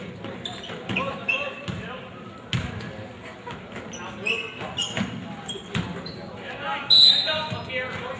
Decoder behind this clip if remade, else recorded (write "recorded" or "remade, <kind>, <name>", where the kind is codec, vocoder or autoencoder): recorded